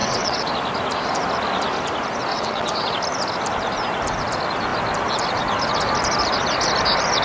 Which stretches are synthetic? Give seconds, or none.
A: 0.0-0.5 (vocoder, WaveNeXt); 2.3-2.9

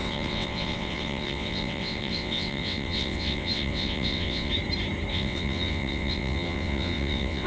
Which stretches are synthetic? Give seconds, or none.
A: 0.0-4.5 (vocoder, WaveNeXt); 5.1-7.5

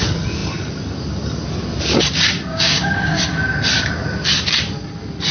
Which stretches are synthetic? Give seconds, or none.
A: 2.5-3.2 (codec, DAC)